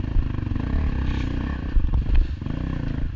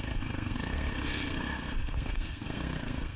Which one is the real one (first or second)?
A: first